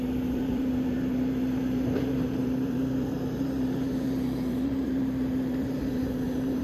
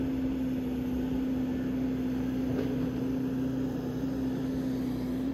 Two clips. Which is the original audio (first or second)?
second